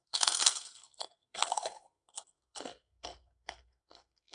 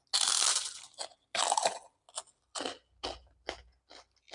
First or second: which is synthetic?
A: first